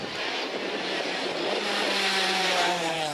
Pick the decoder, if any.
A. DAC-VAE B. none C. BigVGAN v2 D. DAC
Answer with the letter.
C